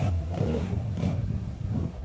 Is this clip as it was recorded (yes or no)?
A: no